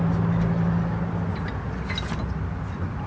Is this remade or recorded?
recorded